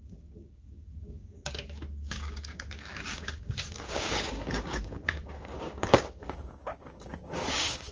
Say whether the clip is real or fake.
fake